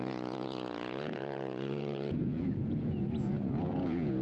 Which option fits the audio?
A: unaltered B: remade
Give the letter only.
B